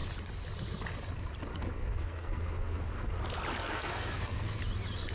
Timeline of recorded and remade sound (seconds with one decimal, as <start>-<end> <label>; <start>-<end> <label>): 0.0-1.5 recorded; 1.5-3.2 remade; 3.2-3.6 recorded; 3.6-4.6 remade; 4.6-5.1 recorded